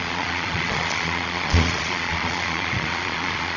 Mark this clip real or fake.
fake